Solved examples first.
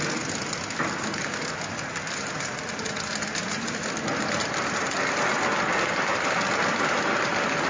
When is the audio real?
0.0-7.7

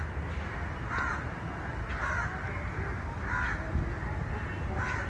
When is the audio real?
0.0-5.1

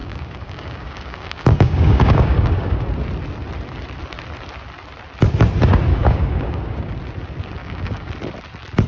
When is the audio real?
2.8-5.9; 6.9-7.6; 8.1-8.9